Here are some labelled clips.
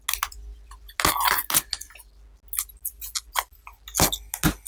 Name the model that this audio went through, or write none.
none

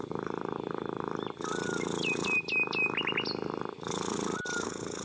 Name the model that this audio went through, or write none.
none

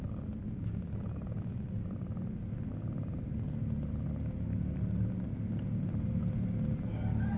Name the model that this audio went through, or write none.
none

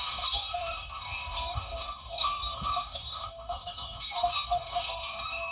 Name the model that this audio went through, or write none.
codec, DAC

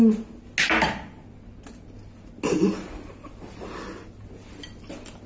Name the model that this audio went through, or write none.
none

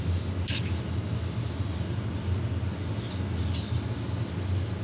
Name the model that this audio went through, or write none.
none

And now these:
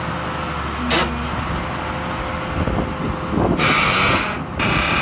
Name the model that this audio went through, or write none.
none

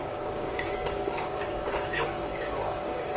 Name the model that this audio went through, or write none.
codec, DAC